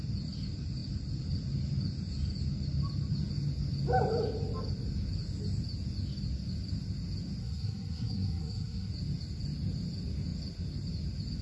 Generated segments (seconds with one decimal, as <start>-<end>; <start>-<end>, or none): 7.4-8.9